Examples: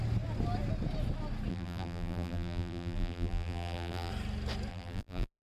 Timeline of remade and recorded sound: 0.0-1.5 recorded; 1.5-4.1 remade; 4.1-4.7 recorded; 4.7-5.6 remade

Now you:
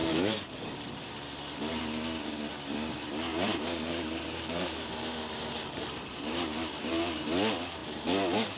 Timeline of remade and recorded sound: 0.0-1.8 remade; 1.8-3.3 recorded; 3.3-7.0 remade; 7.0-8.6 recorded